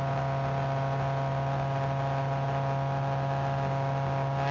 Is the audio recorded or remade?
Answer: recorded